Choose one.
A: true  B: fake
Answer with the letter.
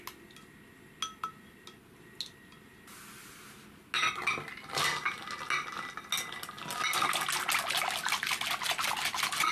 A